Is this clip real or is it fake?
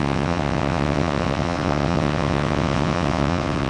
fake